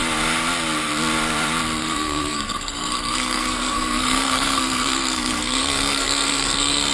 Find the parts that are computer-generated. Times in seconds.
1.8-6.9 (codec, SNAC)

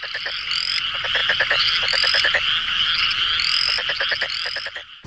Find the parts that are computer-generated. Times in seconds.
none

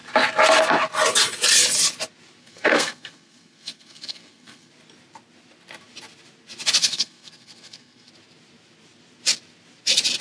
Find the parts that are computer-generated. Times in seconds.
2.4-4.7 (codec, SNAC); 6.8-8.1

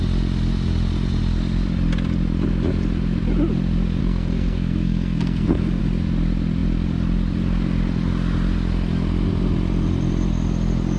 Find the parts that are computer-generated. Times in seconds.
4.0-5.8 (codec, SNAC)

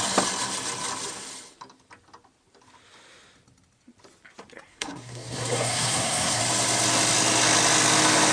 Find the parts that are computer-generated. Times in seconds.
4.7-6.4 (codec, SNAC)

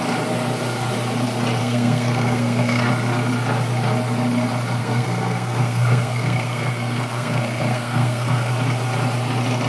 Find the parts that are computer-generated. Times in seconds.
1.6-2.9 (codec, SNAC); 4.8-8.5

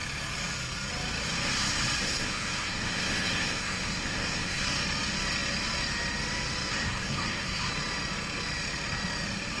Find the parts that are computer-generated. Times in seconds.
2.0-4.6 (codec, SNAC); 6.7-7.7